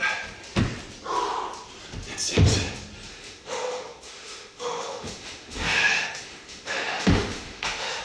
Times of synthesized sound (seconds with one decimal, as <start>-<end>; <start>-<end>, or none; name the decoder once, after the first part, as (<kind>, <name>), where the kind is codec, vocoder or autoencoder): 3.1-8.0 (autoencoder, DAC-VAE)